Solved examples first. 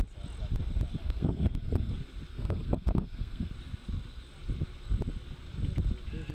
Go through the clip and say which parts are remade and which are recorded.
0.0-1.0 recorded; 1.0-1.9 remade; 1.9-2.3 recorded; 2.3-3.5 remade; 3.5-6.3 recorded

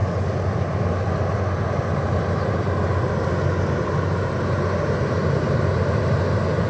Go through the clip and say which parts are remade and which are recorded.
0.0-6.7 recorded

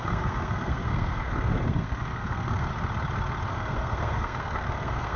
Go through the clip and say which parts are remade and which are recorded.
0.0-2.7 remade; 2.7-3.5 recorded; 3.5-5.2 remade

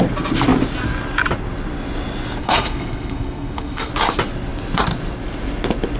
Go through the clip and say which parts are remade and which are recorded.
0.0-2.4 recorded; 2.4-3.9 remade; 3.9-6.0 recorded

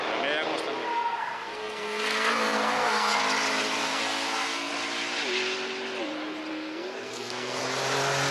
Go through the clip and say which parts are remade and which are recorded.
0.0-0.9 recorded; 0.9-3.2 remade; 3.2-3.8 recorded; 3.8-4.7 remade; 4.7-6.5 recorded; 6.5-7.6 remade; 7.6-8.3 recorded

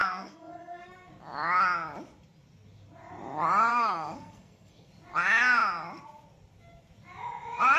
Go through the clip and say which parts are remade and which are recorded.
0.0-1.1 remade; 1.1-3.7 recorded; 3.7-4.9 remade; 4.9-7.8 recorded

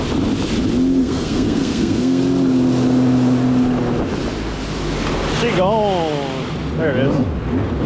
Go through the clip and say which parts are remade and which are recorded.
0.0-1.0 recorded; 1.0-2.2 remade; 2.2-7.9 recorded

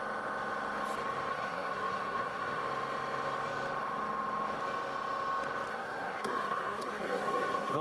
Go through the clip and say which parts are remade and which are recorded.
0.0-1.3 recorded; 1.3-2.6 remade; 2.6-5.7 recorded; 5.7-7.8 remade